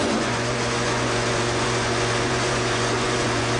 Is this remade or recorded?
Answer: remade